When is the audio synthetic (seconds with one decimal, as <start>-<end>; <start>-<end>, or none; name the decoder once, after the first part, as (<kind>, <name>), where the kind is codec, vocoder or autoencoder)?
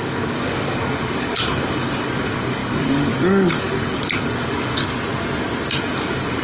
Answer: 0.0-4.8 (codec, DAC); 5.8-6.4